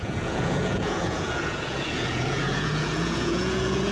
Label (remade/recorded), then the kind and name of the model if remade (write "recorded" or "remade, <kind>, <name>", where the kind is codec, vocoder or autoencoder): remade, vocoder, Vocos